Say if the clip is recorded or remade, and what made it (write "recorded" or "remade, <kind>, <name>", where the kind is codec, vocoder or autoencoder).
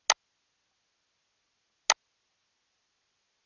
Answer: recorded